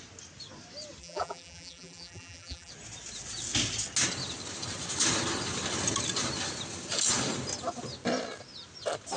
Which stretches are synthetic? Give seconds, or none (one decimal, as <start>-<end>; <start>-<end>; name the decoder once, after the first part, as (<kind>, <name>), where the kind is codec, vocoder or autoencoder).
1.0-2.7 (vocoder, BigVGAN v2)